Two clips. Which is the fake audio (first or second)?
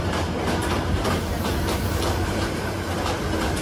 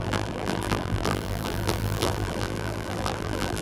second